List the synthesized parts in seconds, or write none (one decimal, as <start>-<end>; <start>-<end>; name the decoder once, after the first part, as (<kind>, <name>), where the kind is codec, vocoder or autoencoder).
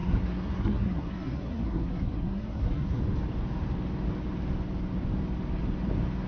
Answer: 0.0-3.0 (codec, SNAC)